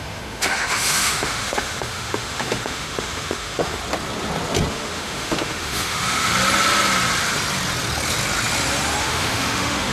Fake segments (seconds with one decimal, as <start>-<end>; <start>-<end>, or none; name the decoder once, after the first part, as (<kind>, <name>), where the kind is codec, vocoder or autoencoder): 0.0-3.8 (autoencoder, DAC-VAE); 4.7-6.3; 9.0-9.9